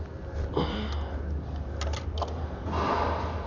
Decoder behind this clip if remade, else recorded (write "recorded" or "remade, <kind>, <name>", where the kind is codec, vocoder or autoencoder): recorded